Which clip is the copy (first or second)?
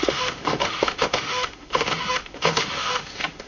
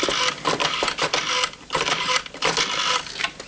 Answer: first